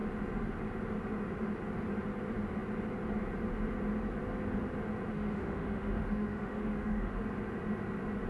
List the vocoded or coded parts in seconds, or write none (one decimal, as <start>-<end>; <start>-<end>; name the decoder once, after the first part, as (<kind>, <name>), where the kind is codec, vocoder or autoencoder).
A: 5.1-7.1 (autoencoder, DAC-VAE)